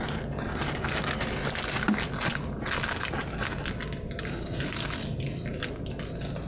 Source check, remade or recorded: recorded